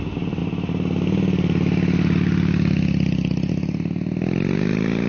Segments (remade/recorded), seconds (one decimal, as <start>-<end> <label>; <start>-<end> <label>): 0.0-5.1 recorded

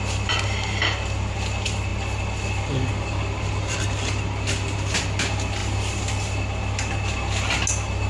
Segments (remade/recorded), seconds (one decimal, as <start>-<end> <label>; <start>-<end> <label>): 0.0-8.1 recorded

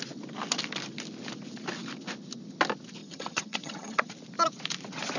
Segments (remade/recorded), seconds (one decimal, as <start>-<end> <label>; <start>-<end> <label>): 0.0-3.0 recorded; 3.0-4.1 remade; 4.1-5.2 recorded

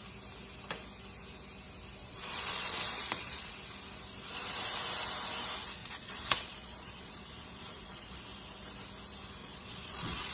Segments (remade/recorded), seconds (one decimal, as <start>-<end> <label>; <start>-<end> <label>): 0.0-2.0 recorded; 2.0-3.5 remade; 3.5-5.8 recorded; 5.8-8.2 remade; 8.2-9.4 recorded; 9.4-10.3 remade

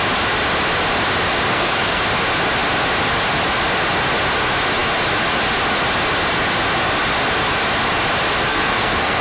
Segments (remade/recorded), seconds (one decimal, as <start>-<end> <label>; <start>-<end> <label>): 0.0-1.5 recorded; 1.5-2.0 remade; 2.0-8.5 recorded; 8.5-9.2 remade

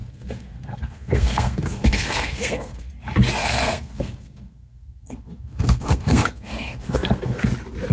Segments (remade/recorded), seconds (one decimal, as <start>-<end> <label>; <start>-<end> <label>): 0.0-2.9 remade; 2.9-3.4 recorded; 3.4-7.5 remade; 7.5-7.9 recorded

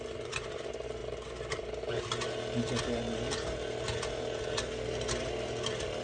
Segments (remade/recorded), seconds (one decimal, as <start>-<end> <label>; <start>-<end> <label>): 0.0-6.0 recorded

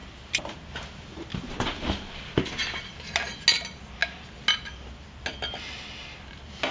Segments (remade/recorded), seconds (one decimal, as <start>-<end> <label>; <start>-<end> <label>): 0.0-0.6 remade; 0.6-1.3 recorded; 1.3-2.2 remade; 2.2-6.7 recorded